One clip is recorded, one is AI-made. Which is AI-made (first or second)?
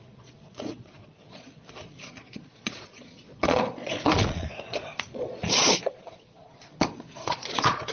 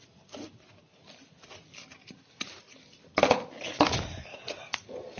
first